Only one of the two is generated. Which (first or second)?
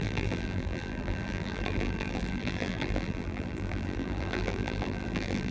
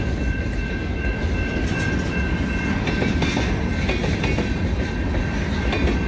first